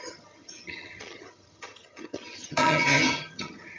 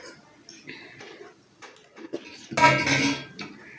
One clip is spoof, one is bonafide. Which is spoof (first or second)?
first